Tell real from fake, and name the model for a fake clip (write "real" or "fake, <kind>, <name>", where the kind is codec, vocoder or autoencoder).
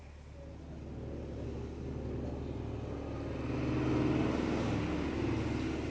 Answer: real